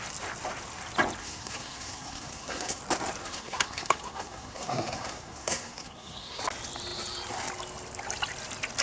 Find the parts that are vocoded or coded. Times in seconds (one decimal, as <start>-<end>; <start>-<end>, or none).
1.2-2.8; 3.2-6.4